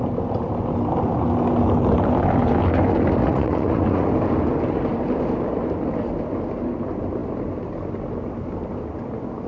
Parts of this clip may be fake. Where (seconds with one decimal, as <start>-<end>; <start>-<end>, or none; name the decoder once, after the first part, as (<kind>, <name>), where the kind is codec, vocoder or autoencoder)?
3.2-4.1 (vocoder, Vocos)